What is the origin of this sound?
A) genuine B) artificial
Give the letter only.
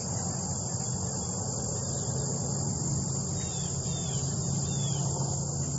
A